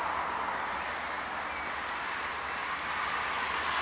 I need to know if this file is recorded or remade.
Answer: recorded